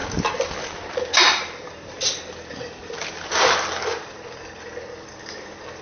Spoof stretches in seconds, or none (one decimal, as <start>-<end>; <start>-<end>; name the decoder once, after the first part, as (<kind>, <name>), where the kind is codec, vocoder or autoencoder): none